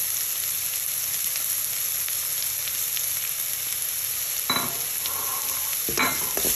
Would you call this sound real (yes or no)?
yes